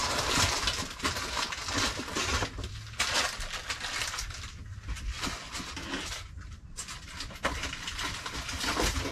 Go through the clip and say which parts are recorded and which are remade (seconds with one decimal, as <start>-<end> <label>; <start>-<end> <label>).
0.0-9.1 recorded